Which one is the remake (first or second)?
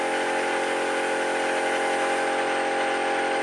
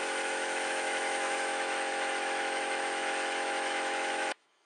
second